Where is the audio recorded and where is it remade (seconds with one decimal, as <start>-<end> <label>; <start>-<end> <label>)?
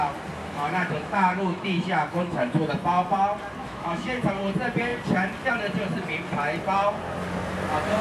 0.0-0.4 recorded; 0.4-2.7 remade; 2.7-3.6 recorded; 3.6-4.3 remade; 4.3-8.0 recorded